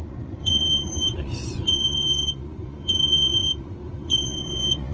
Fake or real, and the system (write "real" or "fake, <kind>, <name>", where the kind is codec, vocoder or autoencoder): fake, vocoder, Vocos